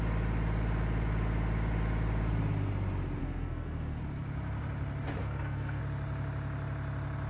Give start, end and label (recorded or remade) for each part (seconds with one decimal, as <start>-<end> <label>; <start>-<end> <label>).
0.0-3.2 recorded; 3.2-4.0 remade; 4.0-5.2 recorded; 5.2-5.8 remade; 5.8-7.3 recorded